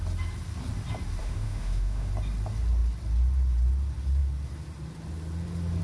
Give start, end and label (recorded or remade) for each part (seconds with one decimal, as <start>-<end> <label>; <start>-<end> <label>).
0.0-1.2 recorded; 1.2-2.1 remade; 2.1-5.8 recorded